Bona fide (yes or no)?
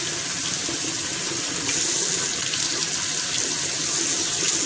yes